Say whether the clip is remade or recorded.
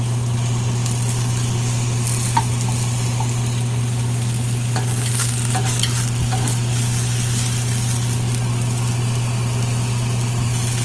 recorded